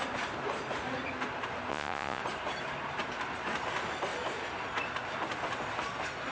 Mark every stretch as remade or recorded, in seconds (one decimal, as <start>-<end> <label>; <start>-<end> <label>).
0.0-1.7 recorded; 1.7-2.2 remade; 2.2-6.3 recorded